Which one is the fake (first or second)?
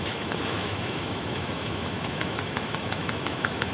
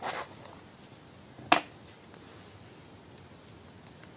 first